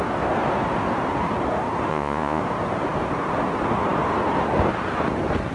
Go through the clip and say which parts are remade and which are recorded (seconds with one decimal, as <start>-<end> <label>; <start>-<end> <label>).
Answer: 0.0-1.9 recorded; 1.9-2.4 remade; 2.4-5.5 recorded